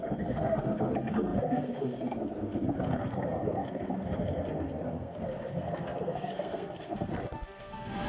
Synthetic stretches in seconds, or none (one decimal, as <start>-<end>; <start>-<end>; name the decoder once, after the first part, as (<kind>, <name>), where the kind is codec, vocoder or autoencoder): 0.0-8.1 (codec, SNAC)